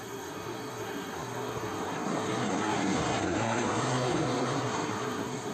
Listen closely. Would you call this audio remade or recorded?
remade